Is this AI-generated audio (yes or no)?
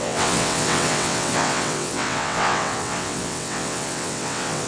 yes